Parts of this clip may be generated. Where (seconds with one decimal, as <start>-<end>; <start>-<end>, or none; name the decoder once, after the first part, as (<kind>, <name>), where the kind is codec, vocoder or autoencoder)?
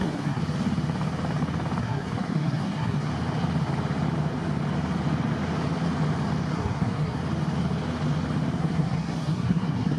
0.0-0.4 (codec, SNAC); 1.8-3.1; 6.5-7.2; 8.6-10.0